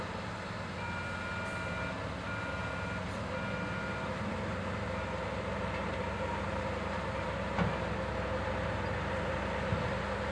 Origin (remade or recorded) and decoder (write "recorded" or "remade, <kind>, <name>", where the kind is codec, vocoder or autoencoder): recorded